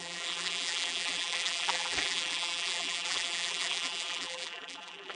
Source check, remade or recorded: remade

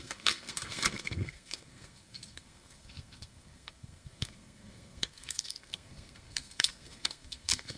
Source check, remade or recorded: remade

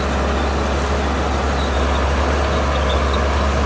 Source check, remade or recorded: recorded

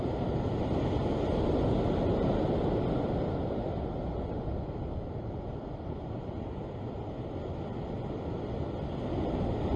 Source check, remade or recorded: recorded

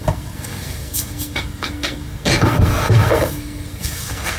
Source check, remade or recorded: remade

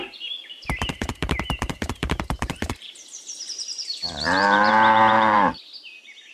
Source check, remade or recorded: remade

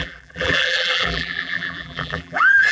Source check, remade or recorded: remade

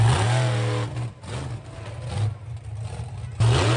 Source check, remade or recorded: recorded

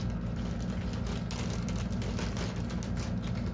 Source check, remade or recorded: recorded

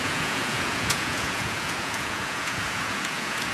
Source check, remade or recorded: remade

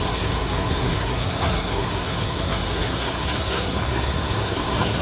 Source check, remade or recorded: remade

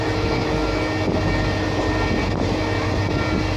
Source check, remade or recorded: recorded